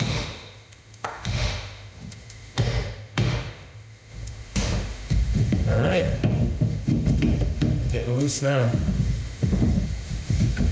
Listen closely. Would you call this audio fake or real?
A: fake